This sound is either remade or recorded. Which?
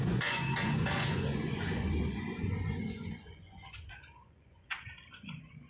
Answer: remade